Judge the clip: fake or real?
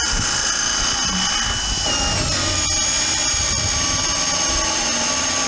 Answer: real